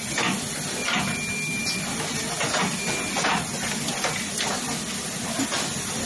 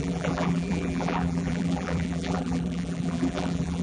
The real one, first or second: first